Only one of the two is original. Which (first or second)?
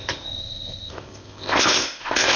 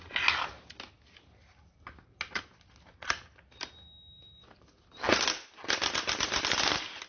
second